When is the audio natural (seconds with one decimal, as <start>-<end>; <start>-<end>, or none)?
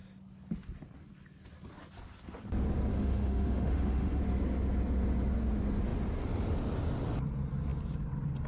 0.0-2.9; 4.2-8.5